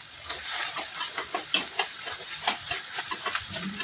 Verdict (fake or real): real